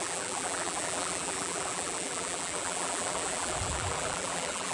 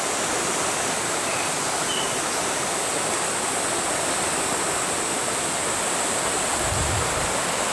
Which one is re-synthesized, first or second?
first